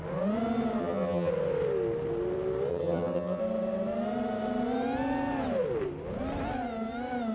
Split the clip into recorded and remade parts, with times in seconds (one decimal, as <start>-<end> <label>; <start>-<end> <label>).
0.0-0.8 recorded; 0.8-1.3 remade; 1.3-2.7 recorded; 2.7-3.4 remade; 3.4-7.3 recorded

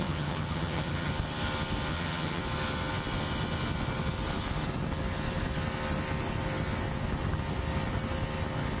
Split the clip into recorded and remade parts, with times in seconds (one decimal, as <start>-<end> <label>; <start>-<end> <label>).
0.0-1.1 remade; 1.1-1.9 recorded; 1.9-2.4 remade; 2.4-8.8 recorded

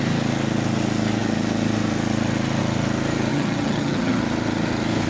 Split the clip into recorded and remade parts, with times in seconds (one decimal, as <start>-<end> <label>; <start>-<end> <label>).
0.0-3.3 recorded; 3.3-4.2 remade; 4.2-5.1 recorded

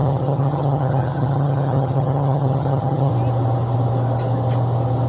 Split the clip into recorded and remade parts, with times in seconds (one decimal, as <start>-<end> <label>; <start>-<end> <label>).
0.0-3.1 remade; 3.1-5.1 recorded